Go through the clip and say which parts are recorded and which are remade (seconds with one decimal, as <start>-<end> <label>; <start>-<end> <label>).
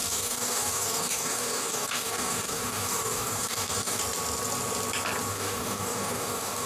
0.0-4.0 remade; 4.0-5.3 recorded; 5.3-6.7 remade